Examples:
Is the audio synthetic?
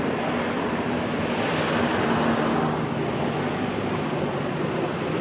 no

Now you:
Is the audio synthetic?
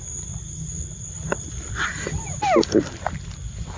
no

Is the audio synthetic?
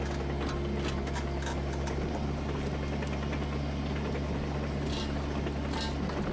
no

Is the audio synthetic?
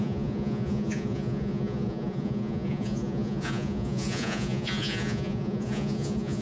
yes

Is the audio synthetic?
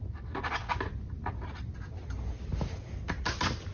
no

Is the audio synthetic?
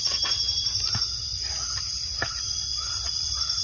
no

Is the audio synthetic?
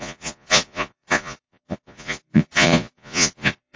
yes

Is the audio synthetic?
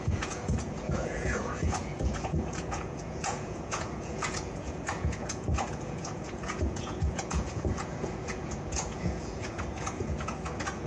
yes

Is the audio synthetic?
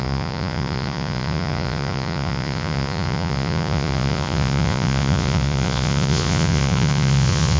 yes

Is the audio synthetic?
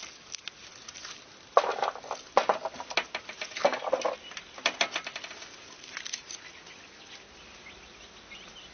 no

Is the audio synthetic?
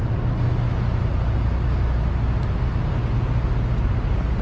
no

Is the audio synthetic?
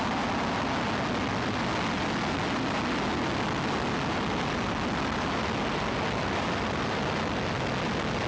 no